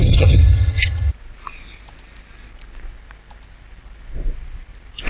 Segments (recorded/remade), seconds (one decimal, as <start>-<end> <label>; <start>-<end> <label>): 0.0-1.1 remade; 1.1-5.1 recorded